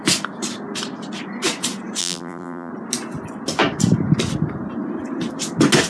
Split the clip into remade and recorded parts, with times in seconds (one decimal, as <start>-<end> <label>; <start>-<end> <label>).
0.0-2.0 recorded; 2.0-2.7 remade; 2.7-5.9 recorded